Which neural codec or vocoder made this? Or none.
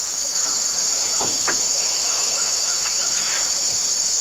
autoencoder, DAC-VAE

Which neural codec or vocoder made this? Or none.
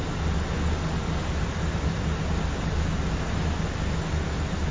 none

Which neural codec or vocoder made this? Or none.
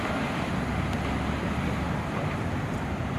none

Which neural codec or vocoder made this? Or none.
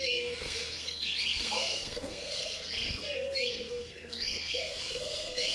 codec, SNAC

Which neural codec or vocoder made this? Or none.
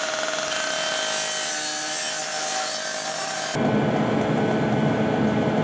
none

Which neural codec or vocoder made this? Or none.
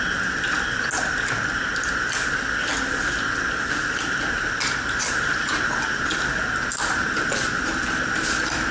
none